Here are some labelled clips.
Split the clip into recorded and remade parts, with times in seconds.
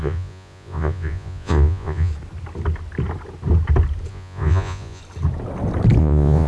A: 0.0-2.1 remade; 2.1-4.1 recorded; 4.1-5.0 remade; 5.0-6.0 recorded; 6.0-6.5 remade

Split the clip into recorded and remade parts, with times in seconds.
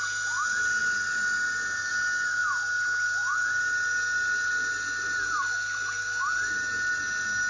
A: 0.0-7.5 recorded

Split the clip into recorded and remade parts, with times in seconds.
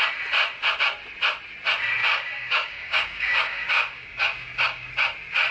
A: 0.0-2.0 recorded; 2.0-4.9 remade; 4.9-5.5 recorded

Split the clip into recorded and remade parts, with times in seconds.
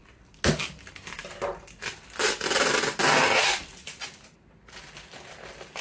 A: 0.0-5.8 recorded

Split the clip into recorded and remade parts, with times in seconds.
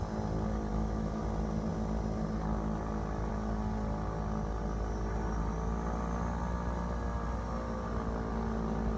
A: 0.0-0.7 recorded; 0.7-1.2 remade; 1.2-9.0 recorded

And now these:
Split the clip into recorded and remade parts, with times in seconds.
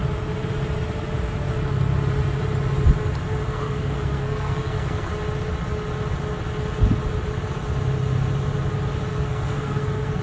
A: 0.0-3.5 recorded; 3.5-5.1 remade; 5.1-9.1 recorded; 9.1-10.2 remade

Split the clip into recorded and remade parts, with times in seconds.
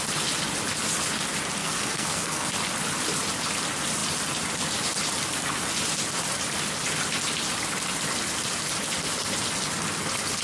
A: 0.0-1.6 recorded; 1.6-2.5 remade; 2.5-10.4 recorded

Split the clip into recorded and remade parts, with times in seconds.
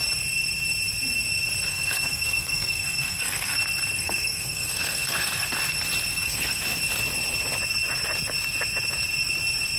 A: 0.0-1.7 recorded; 1.7-3.6 remade; 3.6-4.0 recorded; 4.0-5.5 remade; 5.5-6.1 recorded; 6.1-6.6 remade; 6.6-9.8 recorded